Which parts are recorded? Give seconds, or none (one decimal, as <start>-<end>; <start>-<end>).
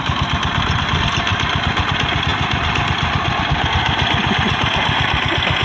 0.0-5.6